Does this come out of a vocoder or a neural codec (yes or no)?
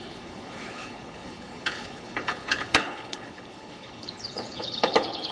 yes